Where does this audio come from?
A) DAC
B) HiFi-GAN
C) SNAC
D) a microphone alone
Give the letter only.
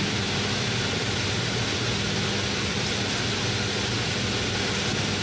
D